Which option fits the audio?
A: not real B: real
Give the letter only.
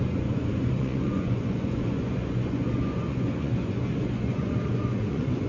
A